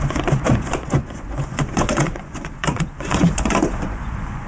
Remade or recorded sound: remade